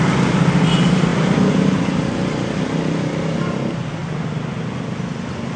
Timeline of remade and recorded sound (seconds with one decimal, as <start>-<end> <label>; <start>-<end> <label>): 0.0-4.0 recorded; 4.0-4.7 remade; 4.7-5.6 recorded